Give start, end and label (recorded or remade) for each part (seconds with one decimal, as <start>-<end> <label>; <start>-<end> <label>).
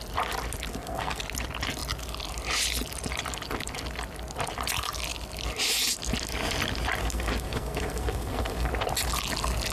0.0-0.7 recorded; 0.7-1.2 remade; 1.2-7.0 recorded; 7.0-8.7 remade; 8.7-9.7 recorded